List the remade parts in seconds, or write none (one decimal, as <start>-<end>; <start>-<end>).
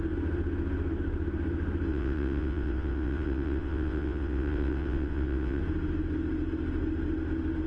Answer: 1.9-5.6